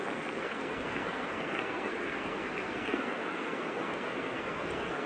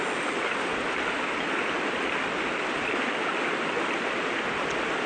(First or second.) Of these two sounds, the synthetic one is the first